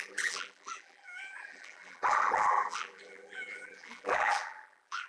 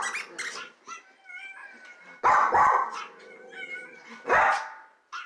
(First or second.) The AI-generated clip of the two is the first